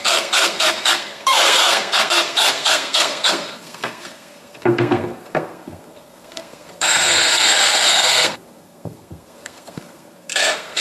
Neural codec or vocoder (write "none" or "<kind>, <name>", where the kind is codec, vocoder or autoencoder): codec, SNAC